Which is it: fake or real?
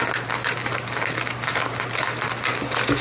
real